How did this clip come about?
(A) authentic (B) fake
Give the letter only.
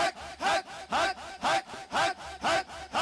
A